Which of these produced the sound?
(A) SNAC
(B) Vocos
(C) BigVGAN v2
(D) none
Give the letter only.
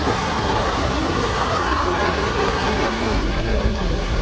A